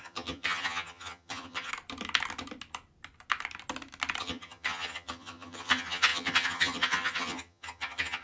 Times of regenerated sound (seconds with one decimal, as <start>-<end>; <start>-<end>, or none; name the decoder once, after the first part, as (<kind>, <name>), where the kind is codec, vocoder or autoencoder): 0.0-1.7 (vocoder, HiFi-GAN); 4.2-8.2